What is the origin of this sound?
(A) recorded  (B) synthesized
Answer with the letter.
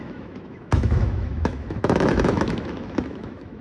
B